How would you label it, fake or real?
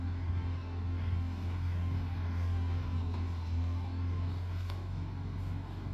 fake